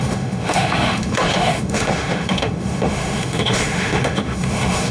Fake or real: fake